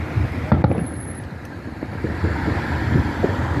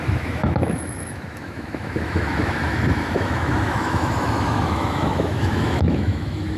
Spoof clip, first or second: second